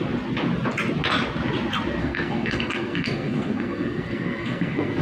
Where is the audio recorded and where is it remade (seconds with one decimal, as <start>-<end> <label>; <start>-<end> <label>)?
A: 0.0-2.0 recorded; 2.0-5.0 remade